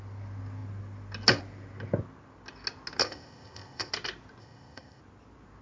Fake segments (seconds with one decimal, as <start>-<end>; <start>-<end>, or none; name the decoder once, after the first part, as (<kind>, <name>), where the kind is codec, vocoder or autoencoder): 3.0-3.9 (codec, ZipCodec); 4.4-5.0